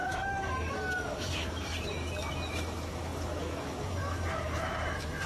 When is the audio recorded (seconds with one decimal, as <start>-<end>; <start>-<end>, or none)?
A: none